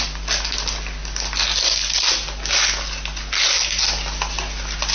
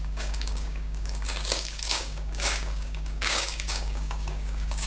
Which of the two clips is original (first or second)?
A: first